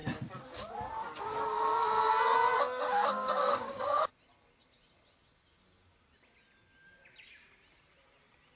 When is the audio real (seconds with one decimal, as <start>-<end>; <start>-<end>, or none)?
0.0-2.9; 3.9-8.6